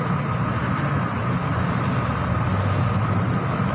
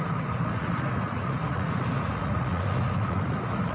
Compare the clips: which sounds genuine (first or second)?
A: first